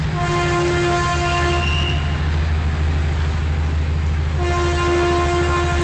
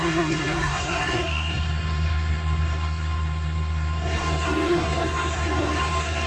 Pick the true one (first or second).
first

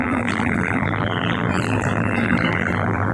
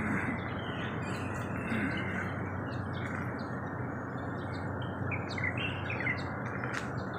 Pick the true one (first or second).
second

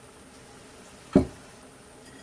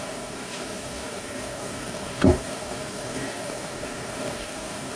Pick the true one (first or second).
first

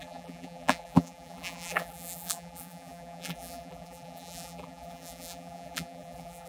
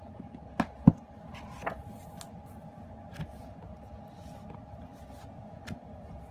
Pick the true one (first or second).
second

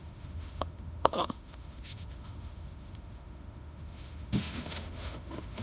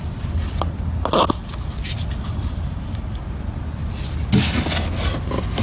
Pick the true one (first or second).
second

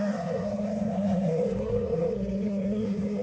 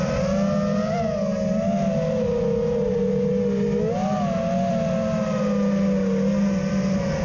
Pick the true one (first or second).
second